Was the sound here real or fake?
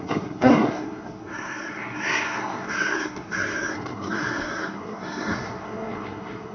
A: fake